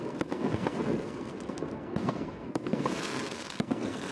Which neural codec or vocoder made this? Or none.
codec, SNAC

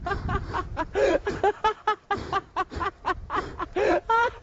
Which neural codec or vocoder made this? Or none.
vocoder, BigVGAN v2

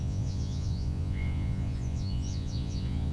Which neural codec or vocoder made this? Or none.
vocoder, Vocos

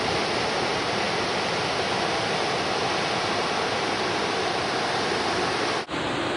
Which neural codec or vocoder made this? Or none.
none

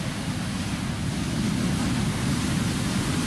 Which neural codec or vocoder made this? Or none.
none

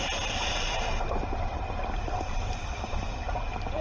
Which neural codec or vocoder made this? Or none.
none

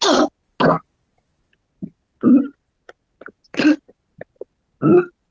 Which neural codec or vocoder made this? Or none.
none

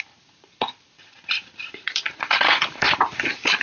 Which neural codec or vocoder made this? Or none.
vocoder, BigVGAN v2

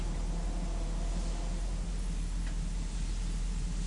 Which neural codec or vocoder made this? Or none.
none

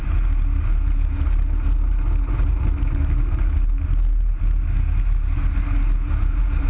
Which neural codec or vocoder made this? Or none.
none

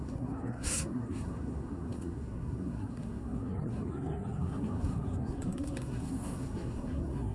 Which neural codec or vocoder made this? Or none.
codec, SNAC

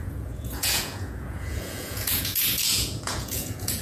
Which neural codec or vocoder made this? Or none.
vocoder, Vocos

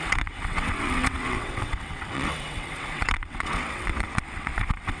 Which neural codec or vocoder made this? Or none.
vocoder, WaveNeXt